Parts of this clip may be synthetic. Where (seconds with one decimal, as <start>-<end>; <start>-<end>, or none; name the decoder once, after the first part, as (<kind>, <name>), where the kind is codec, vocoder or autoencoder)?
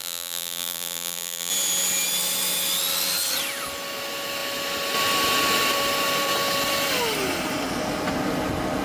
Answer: 0.0-1.5 (vocoder, BigVGAN v2)